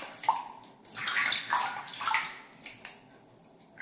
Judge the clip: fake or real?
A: real